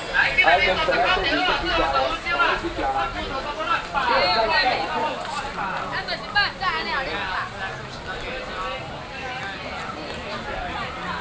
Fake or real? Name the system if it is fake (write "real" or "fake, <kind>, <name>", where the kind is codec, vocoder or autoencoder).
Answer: real